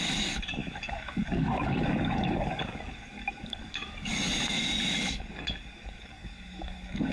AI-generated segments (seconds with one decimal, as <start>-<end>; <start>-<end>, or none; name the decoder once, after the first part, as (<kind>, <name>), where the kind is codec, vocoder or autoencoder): 0.0-4.1 (codec, DAC); 5.0-7.1